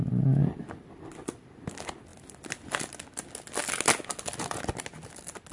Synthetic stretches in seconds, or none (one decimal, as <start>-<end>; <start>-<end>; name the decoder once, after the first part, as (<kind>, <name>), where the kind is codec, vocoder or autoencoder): none